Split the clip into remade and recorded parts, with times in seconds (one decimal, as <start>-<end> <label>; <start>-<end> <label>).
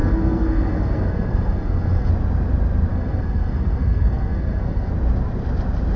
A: 0.0-2.1 remade; 2.1-2.9 recorded; 2.9-4.9 remade; 4.9-6.0 recorded